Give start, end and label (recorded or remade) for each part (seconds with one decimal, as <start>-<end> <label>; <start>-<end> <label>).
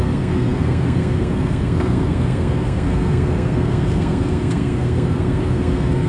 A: 0.0-6.1 remade